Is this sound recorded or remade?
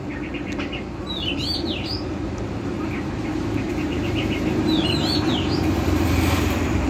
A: remade